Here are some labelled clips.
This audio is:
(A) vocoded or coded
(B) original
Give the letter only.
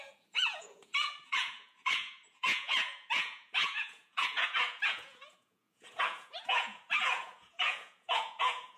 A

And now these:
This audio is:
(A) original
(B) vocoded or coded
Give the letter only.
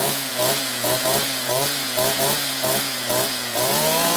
B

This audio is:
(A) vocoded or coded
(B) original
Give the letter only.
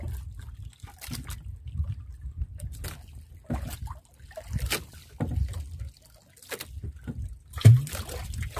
B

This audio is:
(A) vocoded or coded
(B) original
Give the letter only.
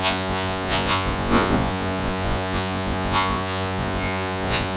A